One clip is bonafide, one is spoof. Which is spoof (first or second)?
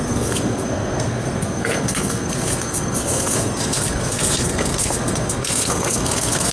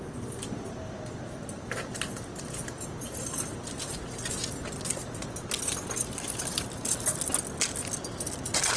first